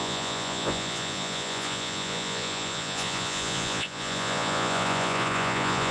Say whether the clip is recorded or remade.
remade